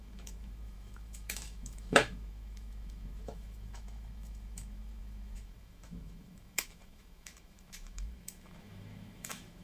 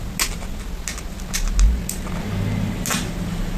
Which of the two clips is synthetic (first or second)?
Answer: first